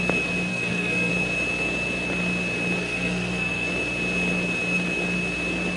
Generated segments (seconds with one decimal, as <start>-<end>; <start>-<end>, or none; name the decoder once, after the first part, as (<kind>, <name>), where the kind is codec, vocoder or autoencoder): 0.5-1.1 (codec, SNAC); 2.8-3.7